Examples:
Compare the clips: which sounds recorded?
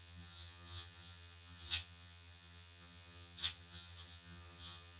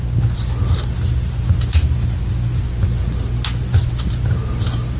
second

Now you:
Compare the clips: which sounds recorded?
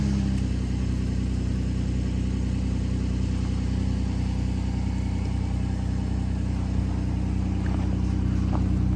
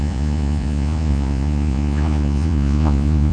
first